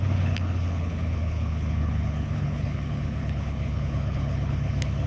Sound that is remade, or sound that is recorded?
remade